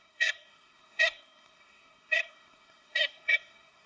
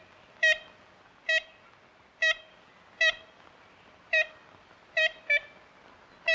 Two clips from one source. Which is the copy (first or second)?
first